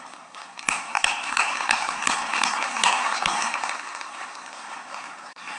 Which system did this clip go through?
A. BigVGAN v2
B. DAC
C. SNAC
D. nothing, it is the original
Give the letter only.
C